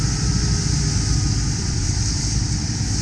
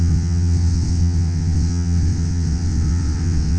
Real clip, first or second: first